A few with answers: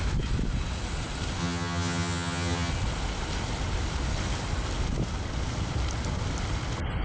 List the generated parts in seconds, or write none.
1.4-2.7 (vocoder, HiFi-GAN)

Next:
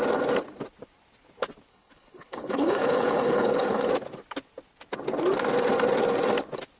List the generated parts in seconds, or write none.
1.7-3.9 (codec, HILCodec)

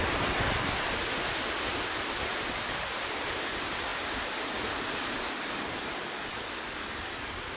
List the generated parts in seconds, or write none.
none

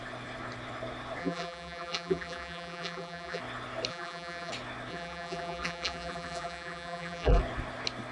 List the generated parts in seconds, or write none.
1.2-3.4 (vocoder, BigVGAN v2); 3.9-4.5; 4.9-7.4